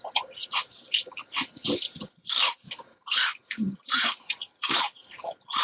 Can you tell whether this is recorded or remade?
remade